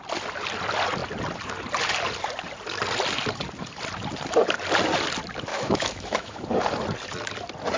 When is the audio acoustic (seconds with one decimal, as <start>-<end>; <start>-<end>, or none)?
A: 0.0-5.5; 6.4-7.8